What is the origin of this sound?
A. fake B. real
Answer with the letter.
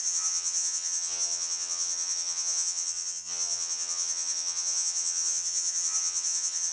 A